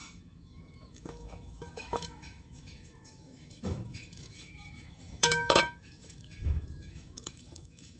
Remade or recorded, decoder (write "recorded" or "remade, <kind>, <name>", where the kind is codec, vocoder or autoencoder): remade, autoencoder, DAC-VAE